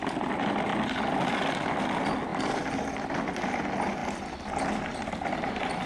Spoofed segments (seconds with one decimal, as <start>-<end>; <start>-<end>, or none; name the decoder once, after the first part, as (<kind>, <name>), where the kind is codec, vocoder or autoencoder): none